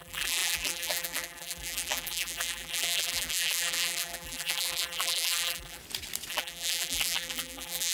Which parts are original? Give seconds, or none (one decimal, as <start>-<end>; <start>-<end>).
5.8-6.3